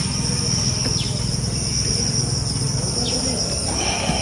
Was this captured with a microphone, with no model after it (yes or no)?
yes